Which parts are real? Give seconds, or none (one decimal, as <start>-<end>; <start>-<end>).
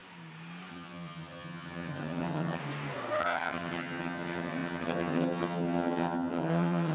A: 0.0-0.7; 2.6-3.2